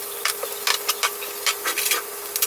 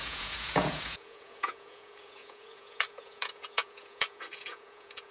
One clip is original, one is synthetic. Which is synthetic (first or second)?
second